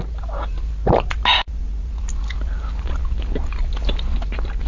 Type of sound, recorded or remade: recorded